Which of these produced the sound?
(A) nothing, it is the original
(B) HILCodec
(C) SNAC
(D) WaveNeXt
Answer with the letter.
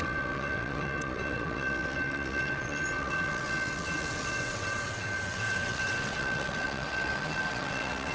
D